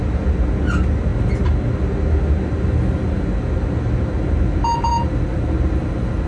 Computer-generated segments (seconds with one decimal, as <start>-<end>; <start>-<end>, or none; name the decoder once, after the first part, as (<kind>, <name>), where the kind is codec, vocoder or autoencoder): none